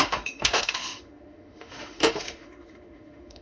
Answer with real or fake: fake